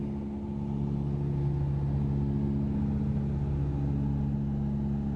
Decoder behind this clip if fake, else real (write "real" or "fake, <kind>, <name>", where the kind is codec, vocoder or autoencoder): real